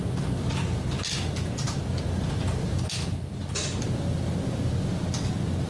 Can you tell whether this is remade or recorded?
recorded